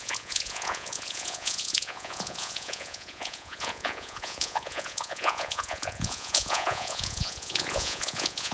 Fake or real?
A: fake